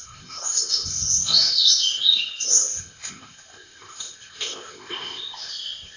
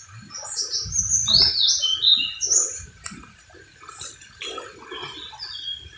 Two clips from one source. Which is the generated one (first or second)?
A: first